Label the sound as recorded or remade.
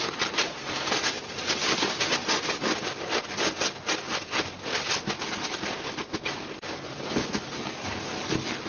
recorded